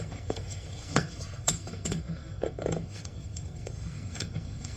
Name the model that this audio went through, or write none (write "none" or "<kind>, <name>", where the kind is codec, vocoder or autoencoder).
codec, SNAC